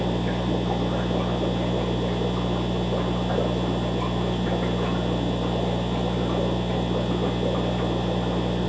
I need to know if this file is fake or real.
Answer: real